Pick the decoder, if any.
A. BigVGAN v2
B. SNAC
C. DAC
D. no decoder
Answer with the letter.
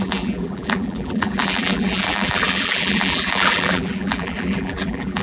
A